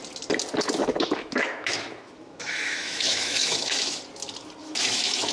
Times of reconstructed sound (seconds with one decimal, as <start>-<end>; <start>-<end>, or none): 0.8-4.0; 4.6-5.3